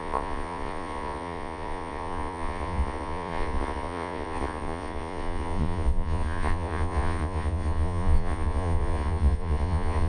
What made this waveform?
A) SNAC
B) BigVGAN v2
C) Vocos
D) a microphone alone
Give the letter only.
C